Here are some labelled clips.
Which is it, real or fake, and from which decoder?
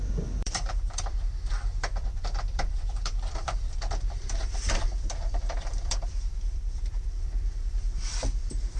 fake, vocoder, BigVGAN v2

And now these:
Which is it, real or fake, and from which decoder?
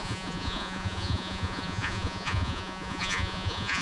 fake, vocoder, Vocos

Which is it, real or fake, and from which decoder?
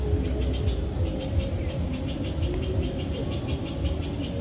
real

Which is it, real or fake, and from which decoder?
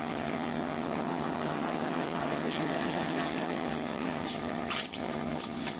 fake, vocoder, HiFi-GAN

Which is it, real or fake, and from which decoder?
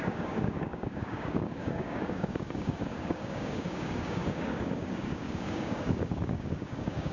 fake, codec, DAC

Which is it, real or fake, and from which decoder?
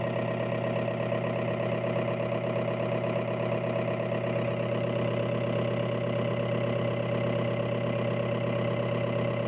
fake, vocoder, BigVGAN v2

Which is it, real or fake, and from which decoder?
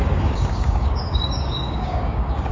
fake, codec, DAC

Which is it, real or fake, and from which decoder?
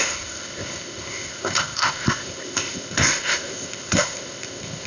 fake, codec, ZipCodec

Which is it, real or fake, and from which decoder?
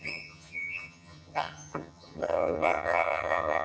fake, vocoder, HiFi-GAN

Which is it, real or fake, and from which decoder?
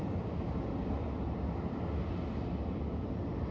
real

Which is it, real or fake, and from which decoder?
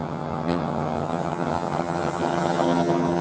fake, vocoder, HiFi-GAN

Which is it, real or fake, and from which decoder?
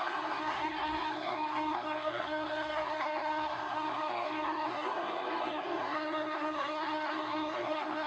fake, codec, SNAC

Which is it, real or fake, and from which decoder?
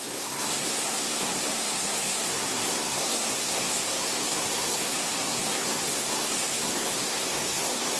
fake, codec, SNAC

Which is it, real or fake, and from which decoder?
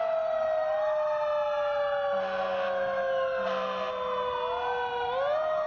real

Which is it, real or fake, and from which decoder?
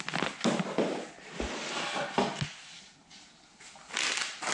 real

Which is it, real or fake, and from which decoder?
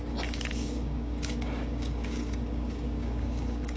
fake, codec, DAC